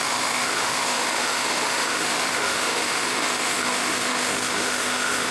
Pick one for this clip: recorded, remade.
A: remade